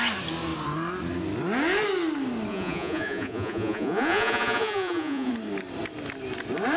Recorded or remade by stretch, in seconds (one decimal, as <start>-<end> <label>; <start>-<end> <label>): 0.0-2.5 recorded; 2.5-5.3 remade; 5.3-6.8 recorded

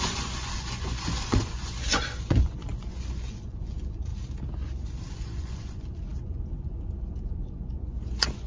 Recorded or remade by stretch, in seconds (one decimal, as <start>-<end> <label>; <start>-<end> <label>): 0.0-4.1 remade; 4.1-5.1 recorded; 5.1-8.5 remade

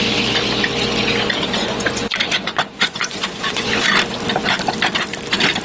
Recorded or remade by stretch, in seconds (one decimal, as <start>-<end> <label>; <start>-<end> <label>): 0.0-1.6 recorded; 1.6-3.7 remade; 3.7-5.6 recorded

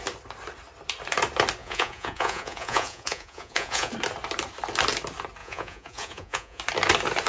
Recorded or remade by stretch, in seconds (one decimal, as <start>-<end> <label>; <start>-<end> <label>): 0.0-1.6 recorded; 1.6-3.9 remade; 3.9-5.4 recorded; 5.4-6.6 remade; 6.6-7.3 recorded

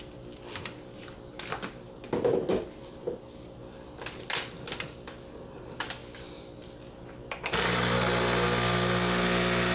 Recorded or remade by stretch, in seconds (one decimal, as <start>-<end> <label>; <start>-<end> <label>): 0.0-9.7 recorded

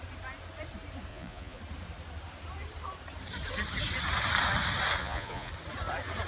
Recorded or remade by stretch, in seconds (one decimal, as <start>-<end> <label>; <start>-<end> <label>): 0.0-1.1 recorded; 1.1-1.6 remade; 1.6-5.0 recorded; 5.0-5.5 remade; 5.5-6.3 recorded

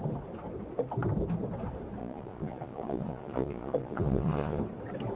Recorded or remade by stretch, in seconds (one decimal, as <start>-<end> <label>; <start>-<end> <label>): 0.0-2.0 recorded; 2.0-4.6 remade; 4.6-5.2 recorded